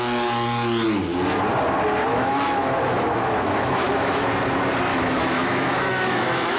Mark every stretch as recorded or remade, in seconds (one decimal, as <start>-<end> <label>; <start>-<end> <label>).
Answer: 0.0-2.1 recorded; 2.1-4.2 remade; 4.2-4.9 recorded; 4.9-6.6 remade